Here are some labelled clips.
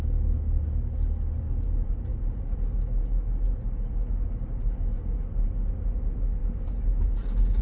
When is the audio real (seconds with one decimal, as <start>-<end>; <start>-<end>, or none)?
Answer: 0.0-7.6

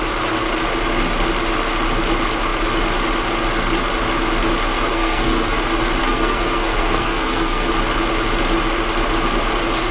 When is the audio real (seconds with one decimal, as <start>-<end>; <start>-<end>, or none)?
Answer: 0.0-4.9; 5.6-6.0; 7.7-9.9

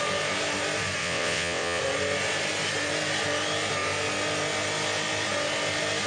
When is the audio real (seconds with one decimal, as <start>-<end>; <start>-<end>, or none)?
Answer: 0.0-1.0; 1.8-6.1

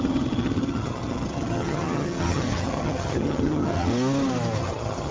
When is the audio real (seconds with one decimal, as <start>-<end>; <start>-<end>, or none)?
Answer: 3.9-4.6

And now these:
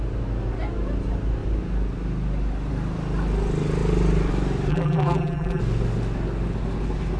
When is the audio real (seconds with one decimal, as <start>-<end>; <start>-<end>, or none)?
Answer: 0.0-4.7; 5.6-7.2